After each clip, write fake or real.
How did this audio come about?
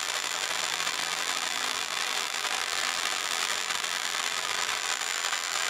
fake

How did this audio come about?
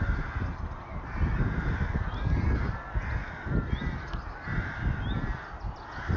real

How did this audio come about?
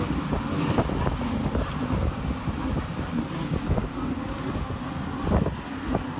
real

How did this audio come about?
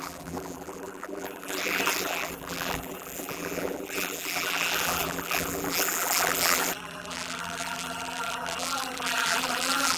fake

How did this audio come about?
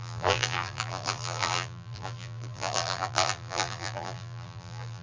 fake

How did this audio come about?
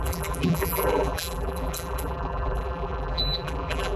fake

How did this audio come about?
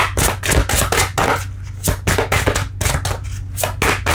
real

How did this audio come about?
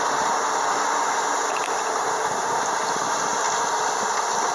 real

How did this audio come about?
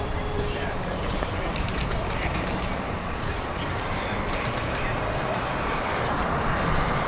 fake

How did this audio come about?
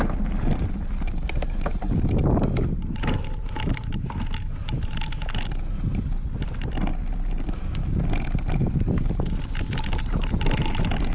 real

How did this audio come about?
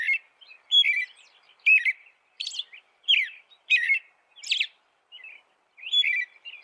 fake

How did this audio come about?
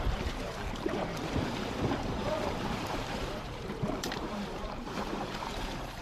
fake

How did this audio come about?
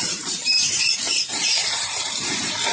fake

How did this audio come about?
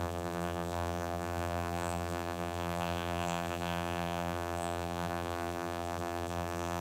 fake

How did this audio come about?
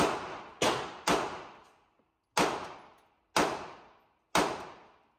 real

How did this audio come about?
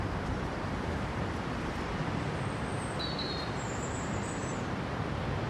fake